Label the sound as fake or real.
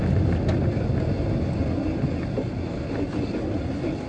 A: real